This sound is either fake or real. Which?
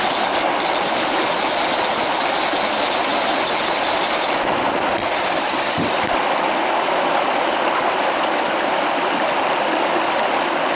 real